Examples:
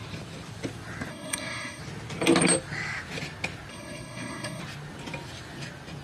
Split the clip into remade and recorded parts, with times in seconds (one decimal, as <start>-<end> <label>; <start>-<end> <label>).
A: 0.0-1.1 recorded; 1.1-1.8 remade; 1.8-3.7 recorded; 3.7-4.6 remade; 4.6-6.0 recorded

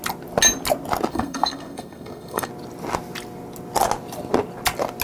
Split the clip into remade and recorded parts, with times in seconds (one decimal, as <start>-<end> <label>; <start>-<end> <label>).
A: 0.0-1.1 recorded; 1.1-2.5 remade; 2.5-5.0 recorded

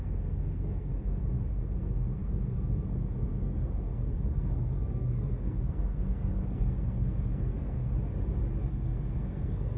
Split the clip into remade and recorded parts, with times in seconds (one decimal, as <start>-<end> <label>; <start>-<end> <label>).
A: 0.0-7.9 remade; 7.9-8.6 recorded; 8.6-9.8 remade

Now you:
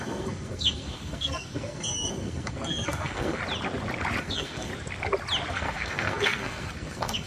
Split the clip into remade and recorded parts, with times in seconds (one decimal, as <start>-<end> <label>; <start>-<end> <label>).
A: 0.0-3.4 remade; 3.4-4.2 recorded; 4.2-4.7 remade; 4.7-5.5 recorded; 5.5-7.3 remade

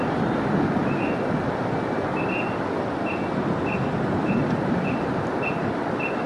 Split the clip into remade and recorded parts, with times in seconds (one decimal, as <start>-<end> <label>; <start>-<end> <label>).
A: 0.0-6.3 recorded

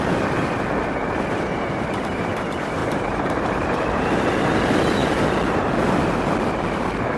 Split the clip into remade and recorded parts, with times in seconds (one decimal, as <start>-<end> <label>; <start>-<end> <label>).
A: 0.0-2.8 recorded; 2.8-4.3 remade; 4.3-7.2 recorded

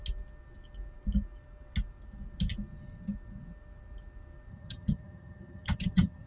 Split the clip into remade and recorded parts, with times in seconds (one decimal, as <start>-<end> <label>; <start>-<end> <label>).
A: 0.0-4.5 recorded; 4.5-6.3 remade